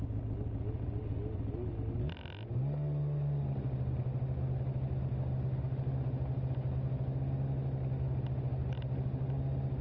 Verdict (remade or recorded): recorded